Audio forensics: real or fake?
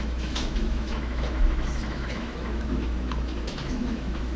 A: fake